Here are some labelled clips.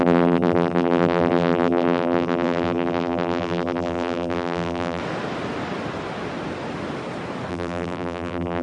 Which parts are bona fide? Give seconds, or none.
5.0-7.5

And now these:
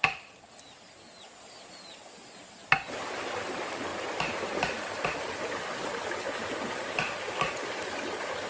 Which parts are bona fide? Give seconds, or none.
0.0-8.5

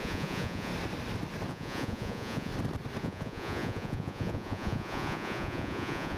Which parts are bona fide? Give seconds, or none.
0.7-1.5; 2.5-3.0

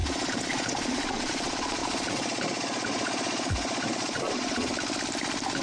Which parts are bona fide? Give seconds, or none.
4.7-5.6

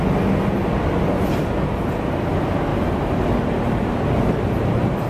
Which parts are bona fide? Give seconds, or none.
0.0-2.7